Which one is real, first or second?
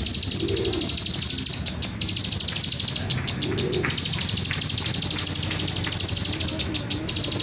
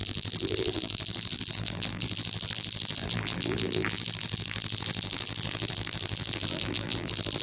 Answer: first